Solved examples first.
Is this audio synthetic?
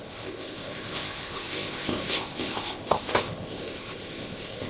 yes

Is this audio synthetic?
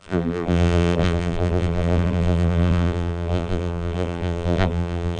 yes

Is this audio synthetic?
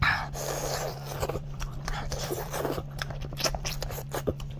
yes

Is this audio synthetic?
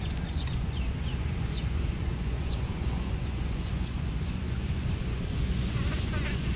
yes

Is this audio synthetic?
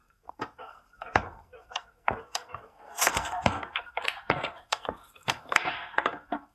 yes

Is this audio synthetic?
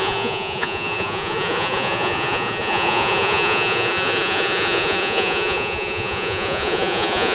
yes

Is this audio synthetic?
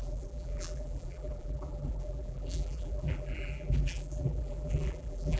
yes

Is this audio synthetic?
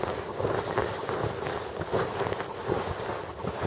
no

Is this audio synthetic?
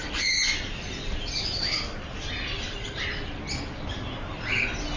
no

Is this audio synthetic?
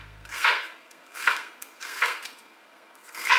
yes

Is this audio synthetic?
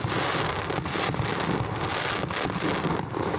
no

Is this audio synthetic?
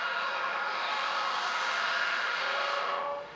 yes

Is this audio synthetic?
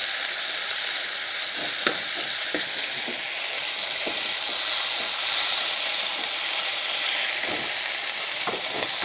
yes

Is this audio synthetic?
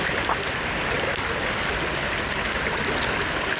no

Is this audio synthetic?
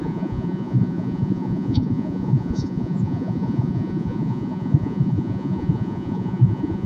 yes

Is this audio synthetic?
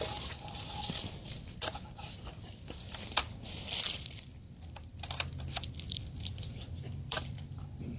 yes